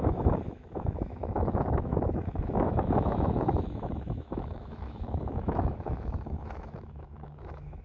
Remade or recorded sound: remade